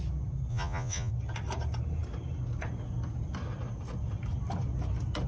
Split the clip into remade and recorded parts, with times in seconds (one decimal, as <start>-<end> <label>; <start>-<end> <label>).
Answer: 0.0-0.5 recorded; 0.5-1.1 remade; 1.1-5.3 recorded